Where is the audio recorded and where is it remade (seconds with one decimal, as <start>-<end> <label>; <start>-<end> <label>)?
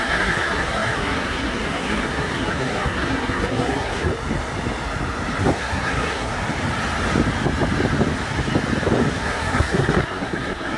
0.0-4.1 remade; 4.1-5.4 recorded; 5.4-6.3 remade; 6.3-9.1 recorded; 9.1-10.8 remade